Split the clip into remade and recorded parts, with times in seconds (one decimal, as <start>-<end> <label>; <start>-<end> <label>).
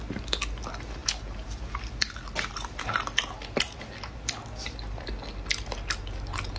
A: 0.0-6.6 recorded